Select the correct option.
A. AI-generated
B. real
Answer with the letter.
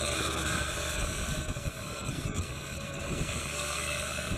A